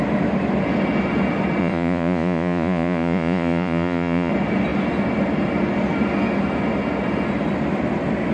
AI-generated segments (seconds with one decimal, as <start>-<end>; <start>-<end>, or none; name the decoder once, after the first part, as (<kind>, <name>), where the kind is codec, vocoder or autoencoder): 1.6-4.3 (vocoder, Vocos)